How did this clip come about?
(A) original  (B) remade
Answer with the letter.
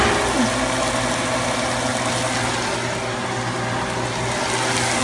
A